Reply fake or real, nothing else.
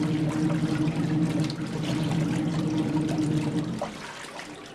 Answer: real